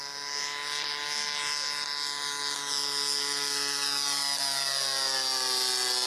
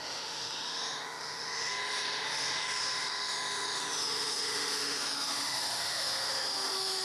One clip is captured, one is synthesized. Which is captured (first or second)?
first